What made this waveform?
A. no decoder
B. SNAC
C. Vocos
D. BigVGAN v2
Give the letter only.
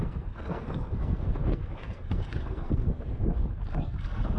B